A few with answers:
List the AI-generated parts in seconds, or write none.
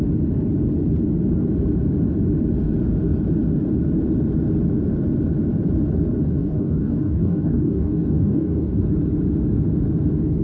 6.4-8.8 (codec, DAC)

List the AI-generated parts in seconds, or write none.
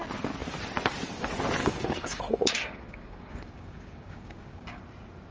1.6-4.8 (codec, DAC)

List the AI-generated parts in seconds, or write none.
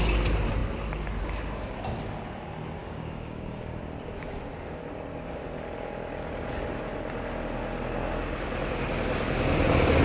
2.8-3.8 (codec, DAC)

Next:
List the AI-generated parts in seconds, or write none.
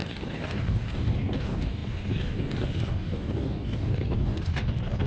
0.0-5.1 (codec, DAC)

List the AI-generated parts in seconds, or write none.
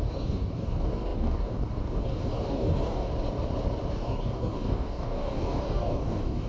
0.0-3.1 (codec, DAC); 3.9-6.5